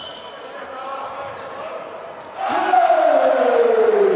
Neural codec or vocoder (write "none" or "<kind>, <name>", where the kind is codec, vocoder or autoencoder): none